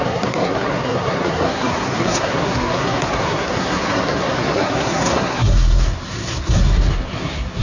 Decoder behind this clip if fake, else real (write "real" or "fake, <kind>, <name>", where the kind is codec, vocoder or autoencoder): fake, codec, SNAC